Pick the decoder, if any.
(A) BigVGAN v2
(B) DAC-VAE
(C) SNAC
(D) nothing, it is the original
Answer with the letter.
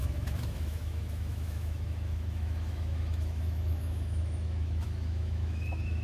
B